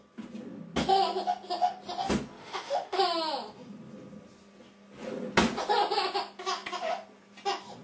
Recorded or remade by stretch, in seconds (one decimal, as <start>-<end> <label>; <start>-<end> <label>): 0.0-2.4 recorded; 2.4-3.0 remade; 3.0-7.8 recorded